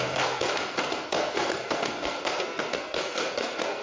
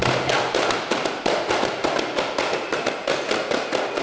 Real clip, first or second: second